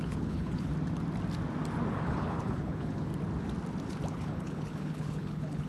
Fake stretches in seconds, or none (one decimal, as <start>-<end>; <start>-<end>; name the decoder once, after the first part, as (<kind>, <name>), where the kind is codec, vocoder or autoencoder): 0.0-0.7 (codec, HILCodec); 1.9-3.1; 4.1-5.7